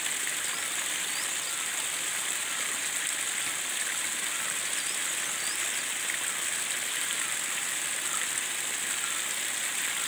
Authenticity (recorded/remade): recorded